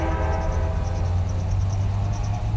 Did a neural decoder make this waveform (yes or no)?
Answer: no